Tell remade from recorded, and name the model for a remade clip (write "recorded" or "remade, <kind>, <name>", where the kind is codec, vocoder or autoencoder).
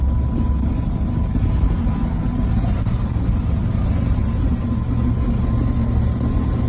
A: recorded